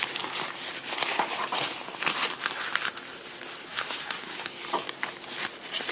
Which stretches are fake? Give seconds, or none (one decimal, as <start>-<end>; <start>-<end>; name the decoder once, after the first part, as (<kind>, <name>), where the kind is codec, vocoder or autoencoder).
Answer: 3.6-4.5 (codec, SNAC)